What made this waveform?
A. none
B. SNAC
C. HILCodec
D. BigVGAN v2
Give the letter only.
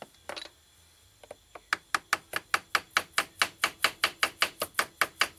A